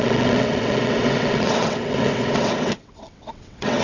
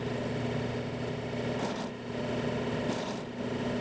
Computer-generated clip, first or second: first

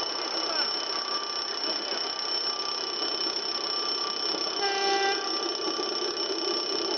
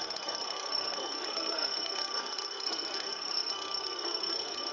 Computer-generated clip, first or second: second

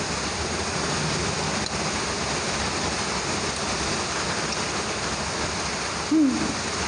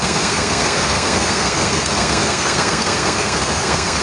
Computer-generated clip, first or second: second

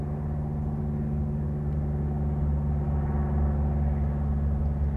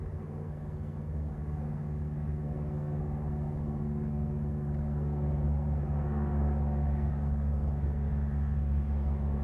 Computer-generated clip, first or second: second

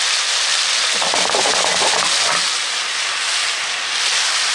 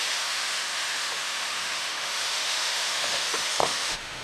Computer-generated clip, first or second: second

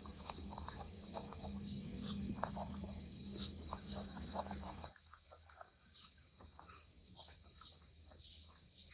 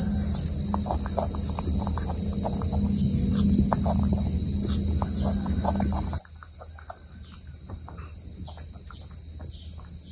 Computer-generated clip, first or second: first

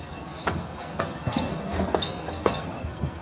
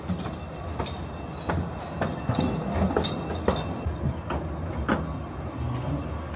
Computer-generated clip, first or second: first